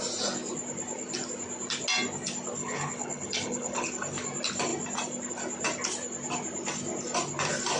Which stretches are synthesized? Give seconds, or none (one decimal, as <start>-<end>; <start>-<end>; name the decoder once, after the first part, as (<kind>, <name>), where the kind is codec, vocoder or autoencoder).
2.6-3.9 (codec, HILCodec)